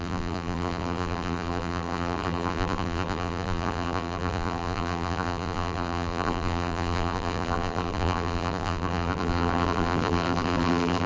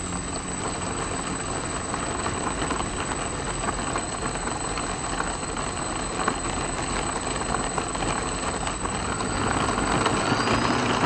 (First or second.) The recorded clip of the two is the second